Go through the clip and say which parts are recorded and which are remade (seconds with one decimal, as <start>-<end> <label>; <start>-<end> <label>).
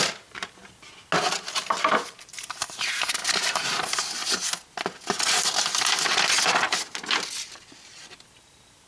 0.0-0.6 remade; 0.6-1.5 recorded; 1.5-3.2 remade; 3.2-8.4 recorded; 8.4-8.9 remade